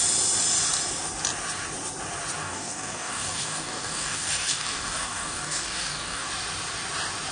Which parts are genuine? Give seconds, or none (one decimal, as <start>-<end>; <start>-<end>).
0.0-2.4; 6.3-7.3